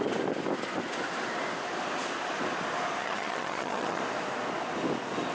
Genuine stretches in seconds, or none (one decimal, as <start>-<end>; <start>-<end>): 0.0-3.0; 4.0-5.3